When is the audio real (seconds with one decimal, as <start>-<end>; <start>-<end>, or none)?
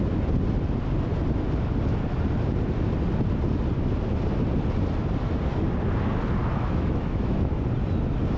0.0-6.4; 7.6-8.4